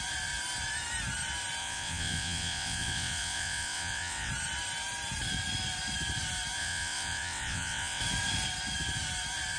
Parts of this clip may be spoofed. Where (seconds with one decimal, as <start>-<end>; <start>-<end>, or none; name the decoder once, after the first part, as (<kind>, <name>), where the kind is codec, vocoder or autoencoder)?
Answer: 1.6-4.3 (vocoder, WaveNeXt); 6.6-8.0